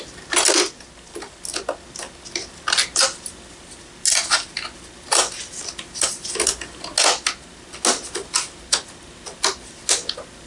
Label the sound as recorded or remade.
recorded